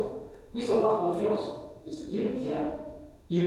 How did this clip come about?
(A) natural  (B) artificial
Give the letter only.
B